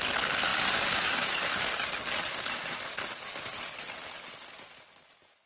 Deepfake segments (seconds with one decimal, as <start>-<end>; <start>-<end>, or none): none